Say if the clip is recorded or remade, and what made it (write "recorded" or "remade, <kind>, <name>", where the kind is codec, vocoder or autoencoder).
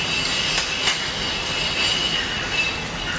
recorded